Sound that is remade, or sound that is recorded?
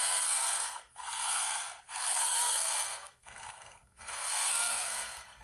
remade